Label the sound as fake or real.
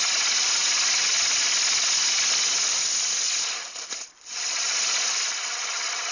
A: real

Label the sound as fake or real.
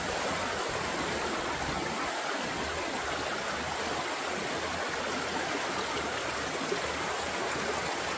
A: real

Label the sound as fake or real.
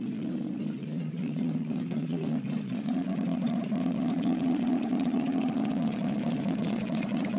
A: fake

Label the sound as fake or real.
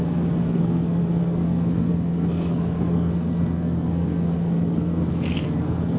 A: fake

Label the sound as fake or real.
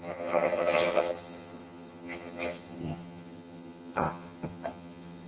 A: fake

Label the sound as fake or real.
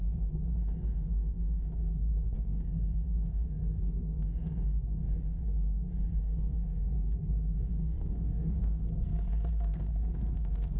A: fake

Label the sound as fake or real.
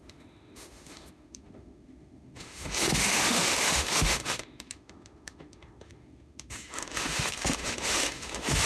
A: fake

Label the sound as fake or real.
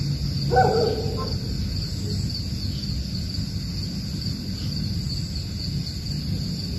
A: real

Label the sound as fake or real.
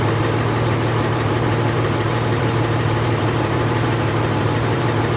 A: fake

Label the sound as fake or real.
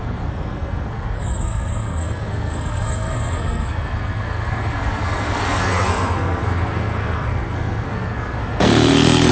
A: fake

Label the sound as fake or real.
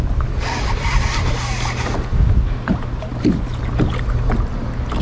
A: real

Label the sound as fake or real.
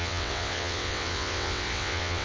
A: fake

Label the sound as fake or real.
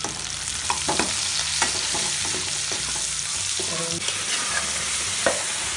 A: real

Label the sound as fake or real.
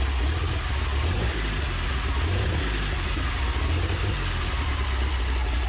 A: real